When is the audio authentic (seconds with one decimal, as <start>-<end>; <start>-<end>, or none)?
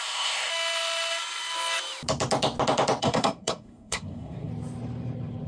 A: 0.5-3.0; 4.5-5.5